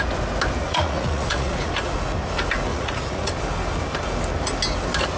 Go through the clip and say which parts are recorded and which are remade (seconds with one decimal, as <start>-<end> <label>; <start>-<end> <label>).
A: 0.0-0.6 recorded; 0.6-1.7 remade; 1.7-2.7 recorded; 2.7-3.3 remade; 3.3-5.2 recorded